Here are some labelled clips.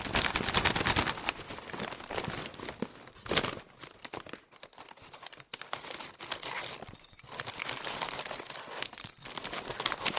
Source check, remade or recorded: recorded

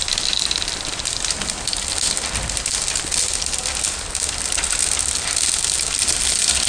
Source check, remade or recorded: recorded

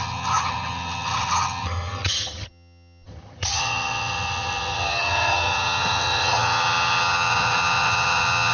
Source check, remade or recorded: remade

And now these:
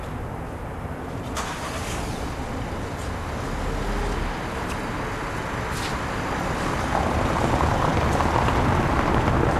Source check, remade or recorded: recorded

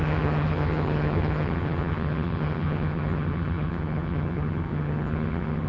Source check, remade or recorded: remade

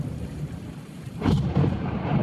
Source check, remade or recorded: remade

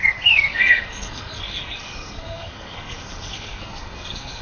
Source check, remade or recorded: remade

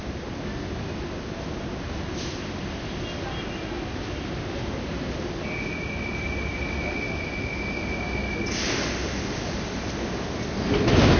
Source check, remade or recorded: recorded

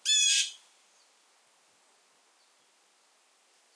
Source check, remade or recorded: recorded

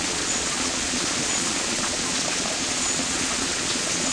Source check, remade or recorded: remade